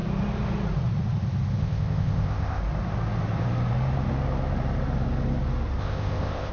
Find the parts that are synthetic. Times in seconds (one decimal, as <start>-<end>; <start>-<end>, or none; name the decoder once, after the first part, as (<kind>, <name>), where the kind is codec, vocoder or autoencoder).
1.6-2.6 (codec, ZipCodec); 5.8-6.5